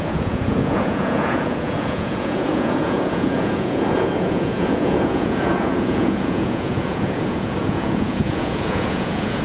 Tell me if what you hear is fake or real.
fake